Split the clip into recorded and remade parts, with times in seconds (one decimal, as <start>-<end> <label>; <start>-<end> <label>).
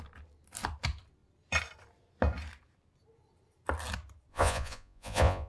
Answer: 0.0-4.3 recorded; 4.3-5.5 remade